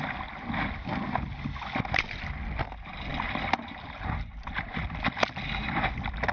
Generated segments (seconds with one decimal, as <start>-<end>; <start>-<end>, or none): none